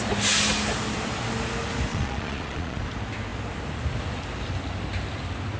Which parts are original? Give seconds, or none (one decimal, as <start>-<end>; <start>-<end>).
0.0-1.9; 2.8-5.6